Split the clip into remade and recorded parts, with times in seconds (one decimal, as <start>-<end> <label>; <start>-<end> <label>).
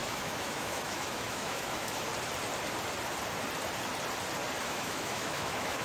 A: 0.0-2.1 remade; 2.1-4.6 recorded; 4.6-5.8 remade